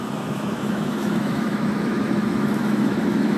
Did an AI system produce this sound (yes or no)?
yes